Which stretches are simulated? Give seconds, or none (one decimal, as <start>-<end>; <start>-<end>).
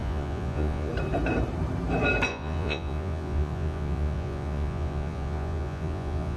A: 0.0-0.9; 2.3-6.4